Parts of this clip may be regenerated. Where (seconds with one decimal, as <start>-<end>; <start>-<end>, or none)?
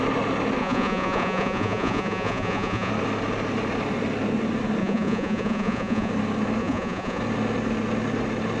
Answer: 0.6-2.9; 4.8-6.1; 6.6-7.2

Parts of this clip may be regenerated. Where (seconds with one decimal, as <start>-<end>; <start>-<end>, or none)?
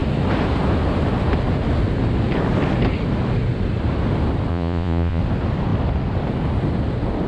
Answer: 4.5-5.2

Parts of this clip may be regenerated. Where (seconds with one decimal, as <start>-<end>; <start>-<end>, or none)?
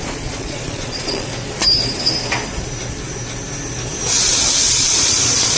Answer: 0.0-1.3; 4.7-5.6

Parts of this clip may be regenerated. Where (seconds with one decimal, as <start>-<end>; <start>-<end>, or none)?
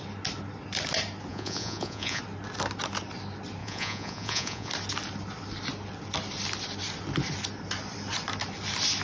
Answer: 1.3-2.2; 3.6-4.7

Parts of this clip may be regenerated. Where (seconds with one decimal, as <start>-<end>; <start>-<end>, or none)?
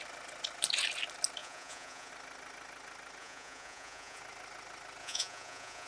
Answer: 1.4-2.1; 3.2-4.2; 5.0-5.9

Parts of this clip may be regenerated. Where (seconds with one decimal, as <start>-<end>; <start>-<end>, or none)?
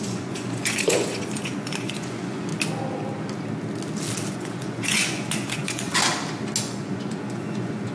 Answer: 0.0-2.5; 4.3-5.9; 6.6-7.9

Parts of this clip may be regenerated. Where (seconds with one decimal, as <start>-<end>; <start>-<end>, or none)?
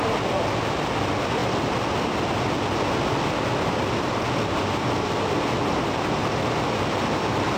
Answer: none